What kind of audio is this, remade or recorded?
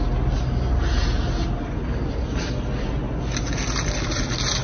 recorded